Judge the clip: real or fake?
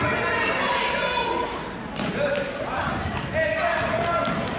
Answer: real